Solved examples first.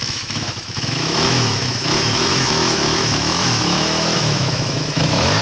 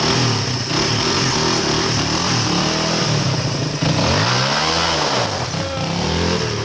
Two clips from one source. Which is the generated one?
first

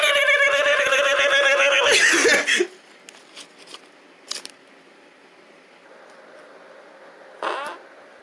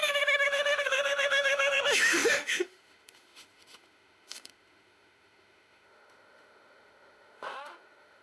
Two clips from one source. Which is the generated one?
second